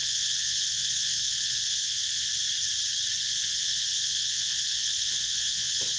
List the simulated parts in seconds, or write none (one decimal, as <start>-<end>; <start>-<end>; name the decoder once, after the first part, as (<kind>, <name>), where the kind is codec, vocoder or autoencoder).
0.0-2.3 (vocoder, Vocos); 3.2-6.0